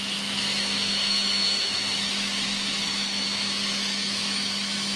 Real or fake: fake